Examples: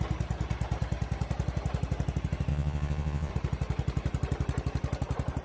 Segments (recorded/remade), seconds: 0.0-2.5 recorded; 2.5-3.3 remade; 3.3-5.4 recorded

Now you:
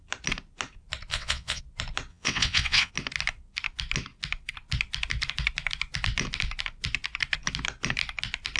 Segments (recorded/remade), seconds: 0.0-1.1 recorded; 1.1-1.6 remade; 1.6-2.1 recorded; 2.1-2.9 remade; 2.9-8.6 recorded

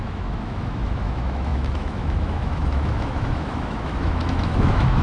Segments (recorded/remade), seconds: 0.0-5.0 remade

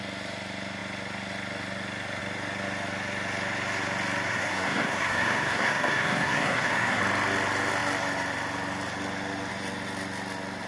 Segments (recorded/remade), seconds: 0.0-4.3 recorded; 4.3-7.0 remade; 7.0-10.7 recorded

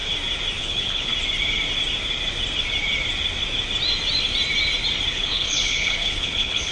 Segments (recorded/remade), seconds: 0.0-0.6 recorded; 0.6-1.1 remade; 1.1-5.1 recorded; 5.1-6.7 remade

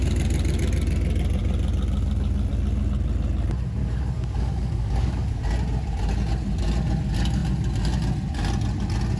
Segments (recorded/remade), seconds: 0.0-3.8 recorded; 3.8-5.4 remade; 5.4-9.2 recorded